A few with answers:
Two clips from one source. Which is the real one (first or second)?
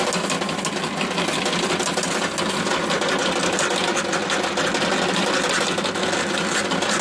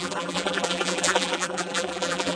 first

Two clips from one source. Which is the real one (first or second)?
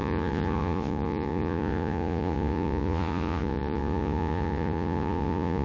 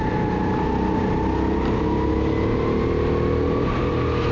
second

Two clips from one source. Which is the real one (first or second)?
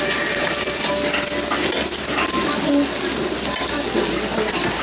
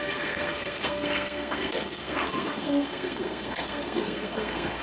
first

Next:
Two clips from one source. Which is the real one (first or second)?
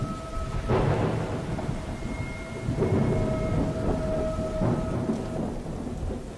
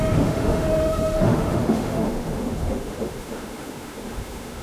first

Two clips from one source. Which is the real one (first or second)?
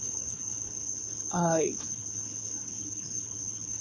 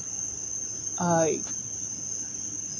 second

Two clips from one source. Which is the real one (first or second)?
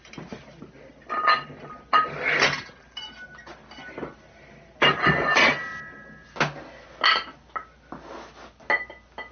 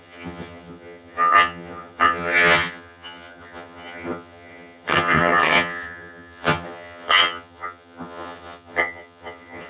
first